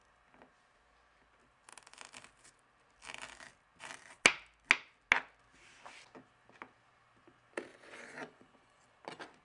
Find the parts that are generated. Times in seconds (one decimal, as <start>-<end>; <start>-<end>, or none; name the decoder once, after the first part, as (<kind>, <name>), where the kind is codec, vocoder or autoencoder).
7.7-8.8 (vocoder, Vocos)